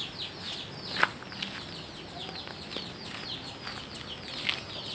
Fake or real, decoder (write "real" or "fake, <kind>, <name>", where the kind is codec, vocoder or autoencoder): real